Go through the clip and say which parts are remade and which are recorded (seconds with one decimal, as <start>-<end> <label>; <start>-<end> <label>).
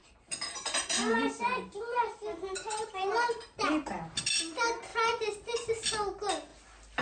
0.0-4.2 remade; 4.2-7.0 recorded